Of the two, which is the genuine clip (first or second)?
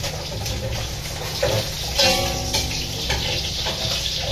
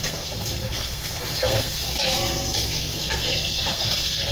first